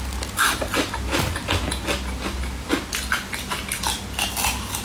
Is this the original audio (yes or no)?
yes